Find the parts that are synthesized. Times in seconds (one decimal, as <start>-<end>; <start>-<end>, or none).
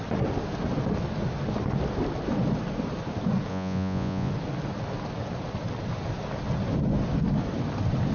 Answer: 3.5-4.3